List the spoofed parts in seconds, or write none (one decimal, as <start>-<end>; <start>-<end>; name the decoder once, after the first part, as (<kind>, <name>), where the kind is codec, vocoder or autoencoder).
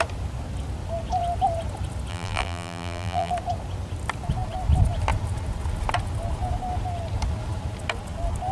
2.1-3.3 (vocoder, BigVGAN v2)